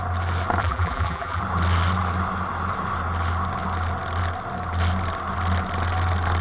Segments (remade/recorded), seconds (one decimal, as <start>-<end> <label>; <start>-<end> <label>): 0.0-0.6 recorded; 0.6-1.4 remade; 1.4-6.4 recorded